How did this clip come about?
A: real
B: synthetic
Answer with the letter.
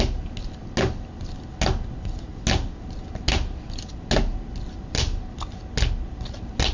A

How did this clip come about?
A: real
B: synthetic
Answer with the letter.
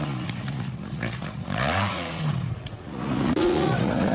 B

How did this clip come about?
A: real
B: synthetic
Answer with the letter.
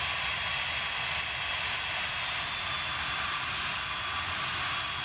A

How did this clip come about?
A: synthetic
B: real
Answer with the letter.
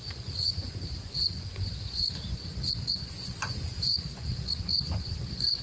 A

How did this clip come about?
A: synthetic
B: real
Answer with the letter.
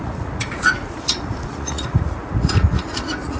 A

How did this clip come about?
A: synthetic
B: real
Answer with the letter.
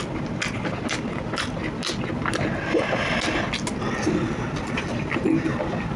B